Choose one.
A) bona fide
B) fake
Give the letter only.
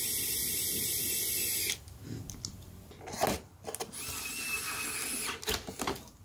A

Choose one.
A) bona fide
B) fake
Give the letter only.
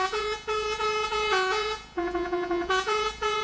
B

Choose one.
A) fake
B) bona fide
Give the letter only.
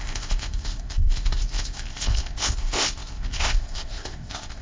A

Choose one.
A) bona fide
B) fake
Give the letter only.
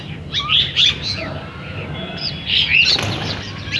A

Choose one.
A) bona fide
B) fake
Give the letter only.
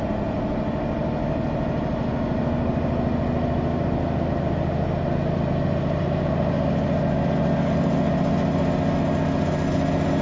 A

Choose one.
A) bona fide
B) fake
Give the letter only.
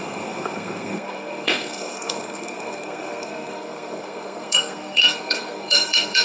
B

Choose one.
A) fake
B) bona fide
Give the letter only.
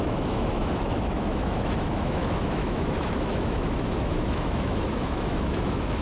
A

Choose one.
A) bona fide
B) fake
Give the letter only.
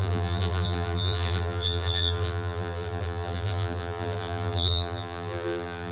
B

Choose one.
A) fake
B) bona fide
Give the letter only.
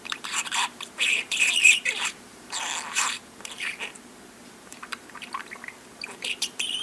A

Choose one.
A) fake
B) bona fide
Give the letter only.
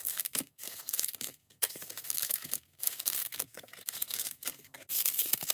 A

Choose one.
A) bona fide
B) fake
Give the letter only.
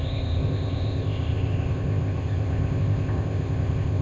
B